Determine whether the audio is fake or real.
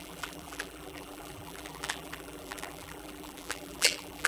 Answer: fake